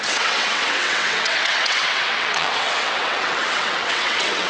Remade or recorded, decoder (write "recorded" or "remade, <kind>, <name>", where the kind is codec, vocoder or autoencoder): remade, vocoder, WaveNeXt